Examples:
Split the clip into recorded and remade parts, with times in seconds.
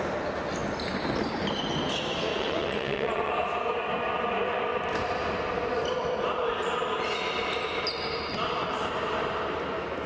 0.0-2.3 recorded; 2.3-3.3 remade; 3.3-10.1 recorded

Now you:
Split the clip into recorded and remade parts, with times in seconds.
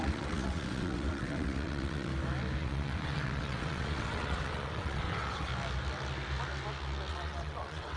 0.0-2.1 remade; 2.1-2.6 recorded; 2.6-5.5 remade; 5.5-7.1 recorded; 7.1-8.0 remade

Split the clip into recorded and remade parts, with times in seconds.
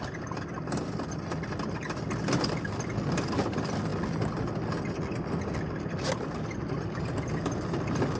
0.0-8.2 recorded